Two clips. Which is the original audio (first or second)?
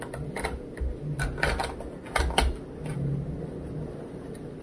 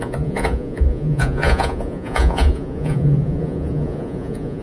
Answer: first